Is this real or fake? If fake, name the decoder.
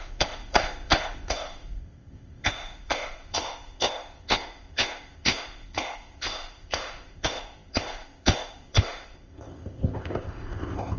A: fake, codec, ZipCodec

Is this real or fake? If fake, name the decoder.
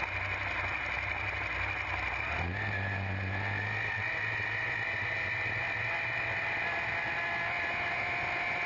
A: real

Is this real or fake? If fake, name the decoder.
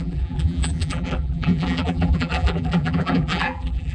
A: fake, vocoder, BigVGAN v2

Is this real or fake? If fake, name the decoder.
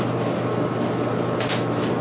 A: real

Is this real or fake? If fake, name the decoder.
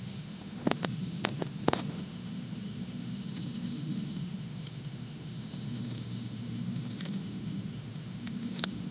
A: fake, autoencoder, DAC-VAE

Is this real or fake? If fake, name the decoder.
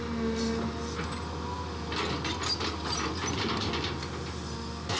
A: real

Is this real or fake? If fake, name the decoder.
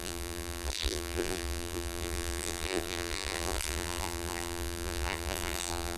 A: fake, vocoder, BigVGAN v2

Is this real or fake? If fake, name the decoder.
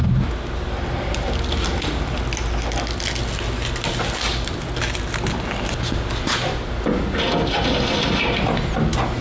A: real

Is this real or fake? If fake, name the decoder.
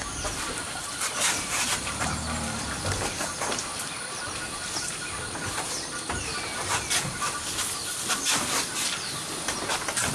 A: real